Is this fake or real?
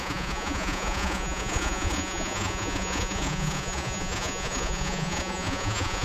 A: fake